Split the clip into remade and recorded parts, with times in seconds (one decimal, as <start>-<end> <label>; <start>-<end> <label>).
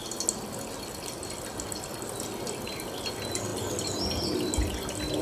0.0-5.2 recorded